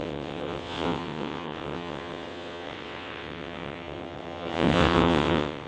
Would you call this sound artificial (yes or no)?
yes